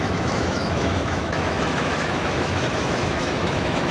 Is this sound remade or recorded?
remade